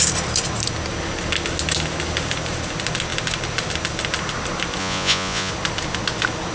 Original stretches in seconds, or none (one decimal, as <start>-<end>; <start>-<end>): 0.0-4.8; 5.5-6.5